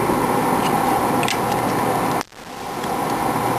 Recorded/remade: recorded